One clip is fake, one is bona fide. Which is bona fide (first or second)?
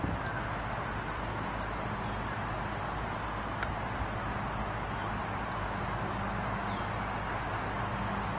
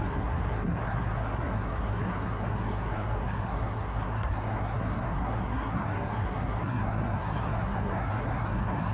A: first